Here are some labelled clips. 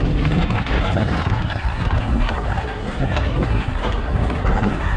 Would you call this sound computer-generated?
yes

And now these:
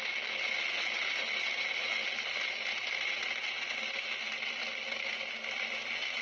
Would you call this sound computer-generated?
no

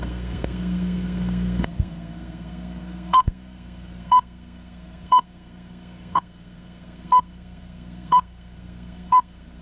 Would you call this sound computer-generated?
yes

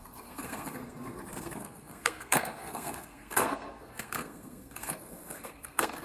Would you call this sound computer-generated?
yes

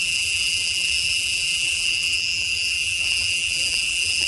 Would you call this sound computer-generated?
yes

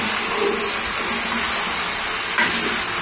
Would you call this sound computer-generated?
no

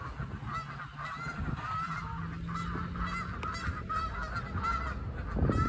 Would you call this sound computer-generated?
no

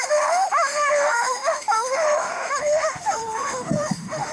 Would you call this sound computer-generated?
yes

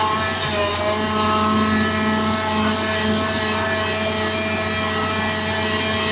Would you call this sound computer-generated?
no